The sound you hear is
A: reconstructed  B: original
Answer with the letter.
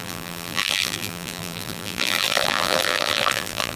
A